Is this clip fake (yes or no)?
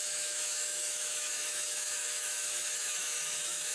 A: yes